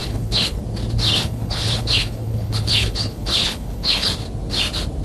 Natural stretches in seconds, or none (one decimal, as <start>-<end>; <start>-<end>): 0.6-1.1; 4.1-5.0